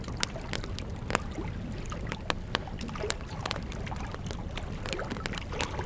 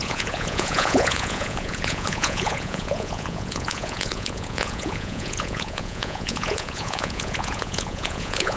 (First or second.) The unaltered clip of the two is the first